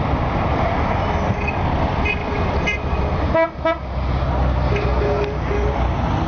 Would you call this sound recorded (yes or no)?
yes